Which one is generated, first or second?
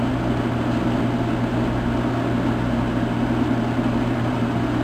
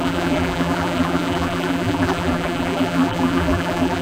second